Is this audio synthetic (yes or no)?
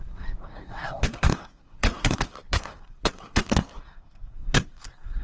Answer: yes